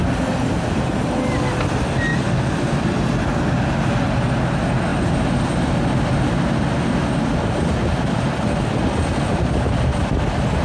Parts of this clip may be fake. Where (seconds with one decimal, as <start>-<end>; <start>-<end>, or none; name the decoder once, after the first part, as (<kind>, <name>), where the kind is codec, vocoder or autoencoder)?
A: none